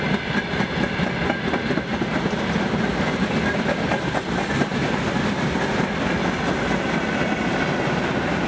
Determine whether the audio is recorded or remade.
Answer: recorded